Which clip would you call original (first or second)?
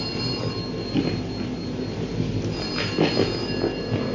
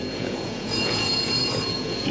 first